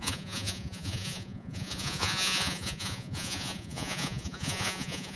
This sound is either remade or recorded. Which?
remade